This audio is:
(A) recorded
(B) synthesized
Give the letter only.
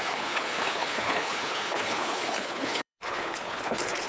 B